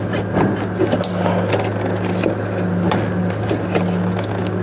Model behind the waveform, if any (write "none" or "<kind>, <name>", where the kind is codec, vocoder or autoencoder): none